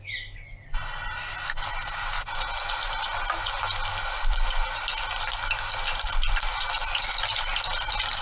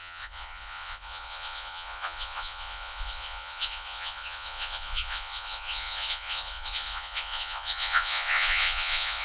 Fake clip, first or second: second